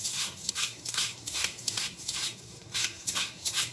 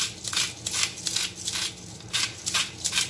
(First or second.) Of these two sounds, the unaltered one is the second